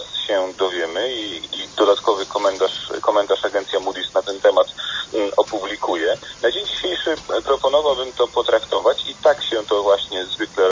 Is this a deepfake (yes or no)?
yes